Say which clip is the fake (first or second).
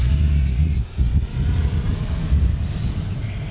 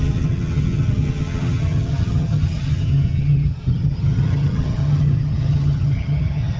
second